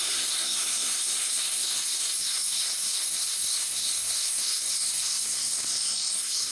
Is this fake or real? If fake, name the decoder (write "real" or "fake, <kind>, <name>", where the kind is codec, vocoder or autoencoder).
fake, codec, SNAC